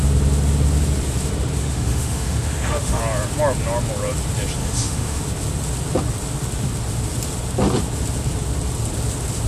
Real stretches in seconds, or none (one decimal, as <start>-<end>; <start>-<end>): 0.0-1.6; 3.0-4.6; 5.2-9.5